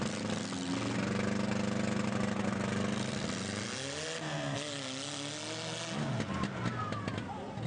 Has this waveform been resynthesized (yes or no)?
no